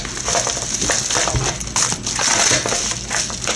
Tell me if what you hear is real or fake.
real